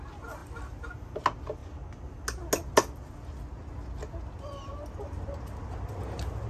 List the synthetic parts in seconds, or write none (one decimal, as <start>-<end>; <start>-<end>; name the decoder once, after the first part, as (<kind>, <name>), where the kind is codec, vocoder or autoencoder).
none